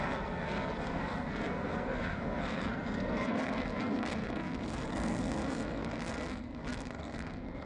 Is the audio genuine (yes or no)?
no